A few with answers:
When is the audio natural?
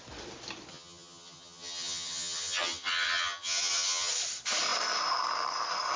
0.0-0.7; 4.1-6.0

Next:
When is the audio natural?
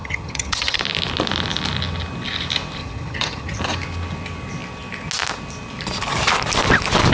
0.8-2.8; 3.6-7.1